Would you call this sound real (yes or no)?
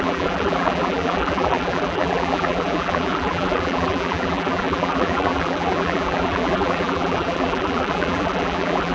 no